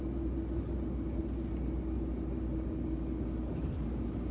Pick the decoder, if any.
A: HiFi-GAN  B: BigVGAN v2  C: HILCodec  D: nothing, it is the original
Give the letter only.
D